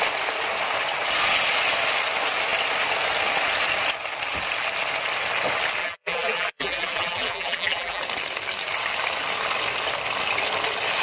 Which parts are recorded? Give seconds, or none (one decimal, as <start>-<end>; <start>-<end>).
0.0-5.8; 8.0-11.0